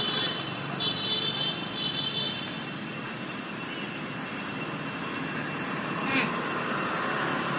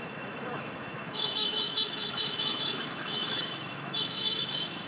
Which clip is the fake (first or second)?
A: second